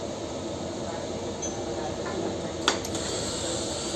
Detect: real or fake real